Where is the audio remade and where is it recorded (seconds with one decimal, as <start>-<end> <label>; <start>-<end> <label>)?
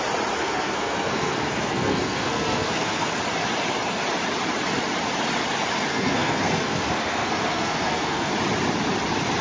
0.0-0.4 recorded; 0.4-3.1 remade; 3.1-5.9 recorded; 5.9-8.3 remade; 8.3-9.4 recorded